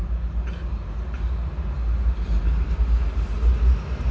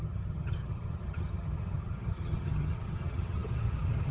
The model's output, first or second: second